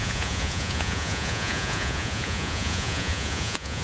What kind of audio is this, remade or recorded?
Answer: remade